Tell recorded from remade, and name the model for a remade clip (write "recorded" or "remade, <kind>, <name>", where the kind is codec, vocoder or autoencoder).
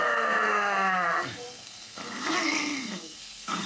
remade, codec, SNAC